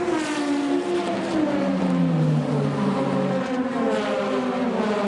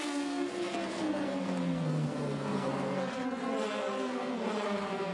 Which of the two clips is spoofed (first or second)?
second